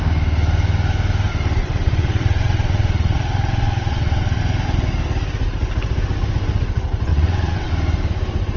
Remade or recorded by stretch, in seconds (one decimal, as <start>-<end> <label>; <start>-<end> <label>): 0.0-1.6 recorded; 1.6-4.4 remade; 4.4-7.1 recorded; 7.1-7.7 remade; 7.7-8.6 recorded